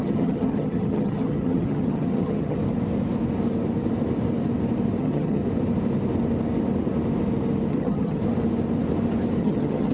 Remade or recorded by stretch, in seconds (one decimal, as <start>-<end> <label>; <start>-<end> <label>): 0.0-2.6 remade; 2.6-5.0 recorded; 5.0-5.4 remade; 5.4-7.7 recorded; 7.7-8.2 remade; 8.2-9.4 recorded; 9.4-9.9 remade